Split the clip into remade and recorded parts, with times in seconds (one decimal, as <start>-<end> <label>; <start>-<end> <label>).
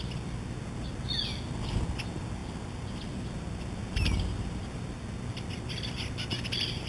0.0-6.9 recorded